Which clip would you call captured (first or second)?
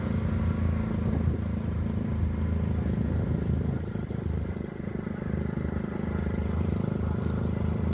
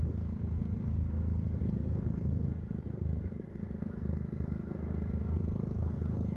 first